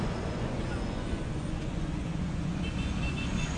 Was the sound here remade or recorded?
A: remade